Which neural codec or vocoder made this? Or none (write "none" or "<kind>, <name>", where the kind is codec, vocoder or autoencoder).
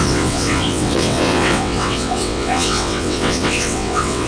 vocoder, WaveNeXt